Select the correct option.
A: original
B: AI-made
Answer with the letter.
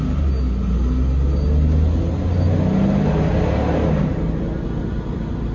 A